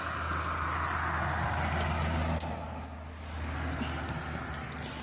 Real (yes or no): yes